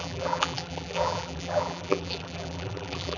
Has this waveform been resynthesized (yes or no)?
yes